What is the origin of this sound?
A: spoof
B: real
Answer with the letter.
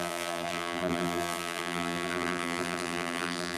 A